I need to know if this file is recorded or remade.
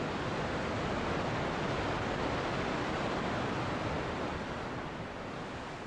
recorded